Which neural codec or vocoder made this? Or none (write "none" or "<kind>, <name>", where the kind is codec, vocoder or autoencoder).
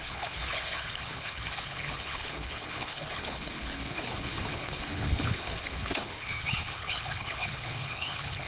codec, HILCodec